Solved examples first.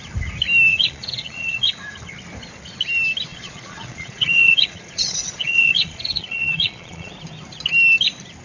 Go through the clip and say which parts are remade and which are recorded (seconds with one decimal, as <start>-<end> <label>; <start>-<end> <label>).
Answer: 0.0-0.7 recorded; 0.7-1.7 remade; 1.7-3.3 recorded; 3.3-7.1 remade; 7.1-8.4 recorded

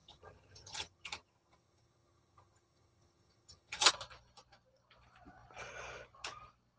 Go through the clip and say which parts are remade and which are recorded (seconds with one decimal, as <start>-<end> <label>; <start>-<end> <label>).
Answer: 0.0-3.9 remade; 3.9-6.8 recorded

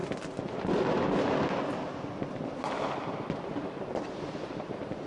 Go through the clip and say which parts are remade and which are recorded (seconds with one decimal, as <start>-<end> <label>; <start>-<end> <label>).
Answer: 0.0-5.1 recorded

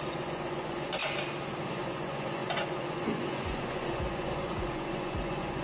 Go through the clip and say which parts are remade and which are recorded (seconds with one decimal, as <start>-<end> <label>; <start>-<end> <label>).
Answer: 0.0-1.0 remade; 1.0-1.7 recorded; 1.7-5.6 remade